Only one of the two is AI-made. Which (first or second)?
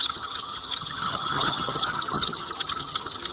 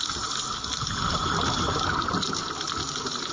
first